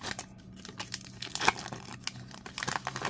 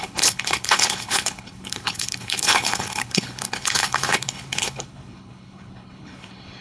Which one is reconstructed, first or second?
second